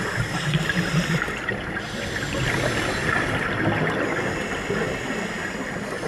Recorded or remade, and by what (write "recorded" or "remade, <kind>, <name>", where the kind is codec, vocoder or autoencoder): recorded